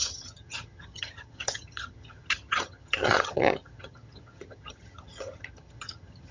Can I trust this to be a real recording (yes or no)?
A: no